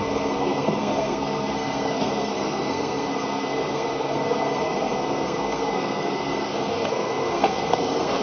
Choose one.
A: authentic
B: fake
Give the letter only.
B